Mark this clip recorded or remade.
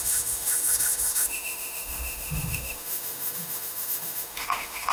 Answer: remade